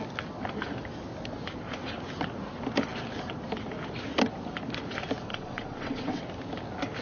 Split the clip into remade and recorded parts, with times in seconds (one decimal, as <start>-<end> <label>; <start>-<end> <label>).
0.0-5.3 recorded; 5.3-6.2 remade; 6.2-7.0 recorded